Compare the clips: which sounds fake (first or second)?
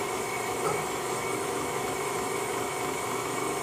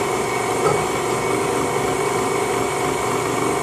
first